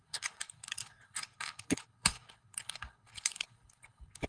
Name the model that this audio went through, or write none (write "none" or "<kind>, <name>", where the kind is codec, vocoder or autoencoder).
codec, HILCodec